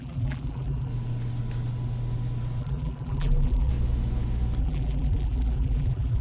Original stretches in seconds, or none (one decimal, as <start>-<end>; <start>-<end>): 0.9-2.6; 3.7-4.6